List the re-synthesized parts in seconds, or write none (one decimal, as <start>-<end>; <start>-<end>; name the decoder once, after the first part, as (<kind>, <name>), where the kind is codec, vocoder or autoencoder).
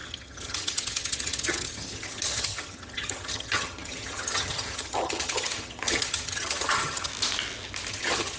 0.0-7.1 (vocoder, HiFi-GAN); 7.9-8.4